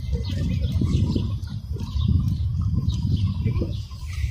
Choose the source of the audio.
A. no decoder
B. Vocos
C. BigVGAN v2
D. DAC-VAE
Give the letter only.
C